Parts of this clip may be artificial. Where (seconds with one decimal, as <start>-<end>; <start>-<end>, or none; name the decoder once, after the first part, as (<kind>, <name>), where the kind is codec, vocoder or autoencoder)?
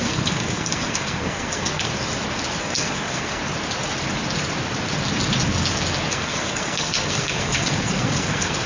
0.0-1.9 (codec, SNAC); 2.6-3.4; 6.1-8.7